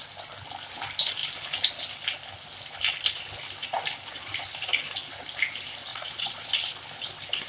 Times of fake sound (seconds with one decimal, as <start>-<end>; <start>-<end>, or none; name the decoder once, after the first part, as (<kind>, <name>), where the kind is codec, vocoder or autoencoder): 5.9-6.5 (vocoder, Vocos)